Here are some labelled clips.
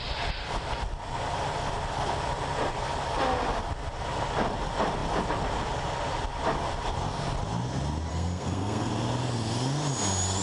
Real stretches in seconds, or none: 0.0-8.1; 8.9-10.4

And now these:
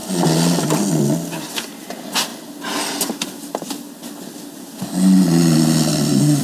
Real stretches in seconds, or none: 0.0-6.4

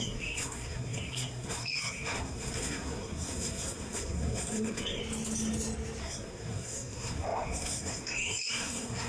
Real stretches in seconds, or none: 5.0-6.0

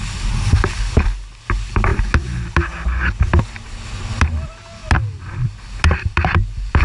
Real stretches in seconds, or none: 0.0-6.8

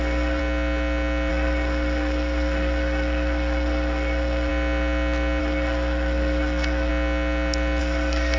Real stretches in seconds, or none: 0.4-1.3; 4.5-5.4; 6.9-7.8

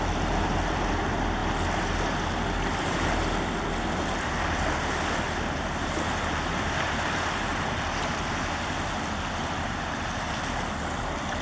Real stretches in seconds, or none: 0.0-11.4